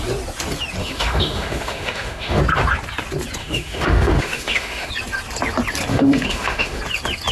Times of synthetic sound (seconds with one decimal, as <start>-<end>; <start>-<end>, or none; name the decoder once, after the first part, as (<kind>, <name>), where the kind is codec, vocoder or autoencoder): 0.8-2.4 (autoencoder, DAC-VAE); 3.4-4.9; 5.9-6.8